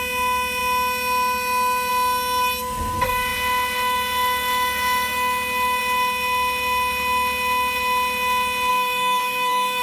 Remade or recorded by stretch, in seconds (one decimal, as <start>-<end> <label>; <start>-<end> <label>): 0.0-8.7 recorded; 8.7-9.8 remade